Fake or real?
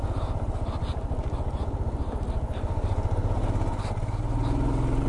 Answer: real